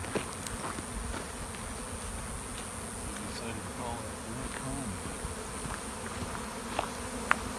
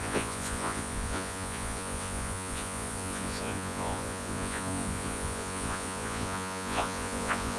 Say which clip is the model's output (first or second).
second